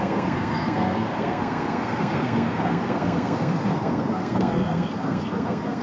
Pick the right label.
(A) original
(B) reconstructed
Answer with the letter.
B